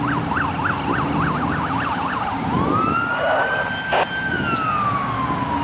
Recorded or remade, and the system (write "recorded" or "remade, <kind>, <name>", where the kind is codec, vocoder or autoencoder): recorded